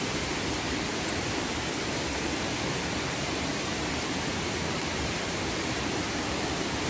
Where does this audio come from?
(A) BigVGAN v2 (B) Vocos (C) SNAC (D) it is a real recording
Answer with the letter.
A